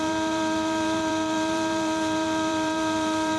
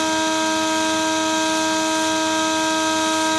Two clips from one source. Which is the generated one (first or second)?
first